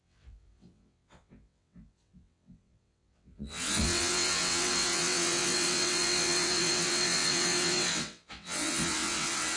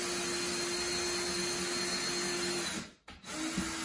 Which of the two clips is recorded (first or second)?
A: second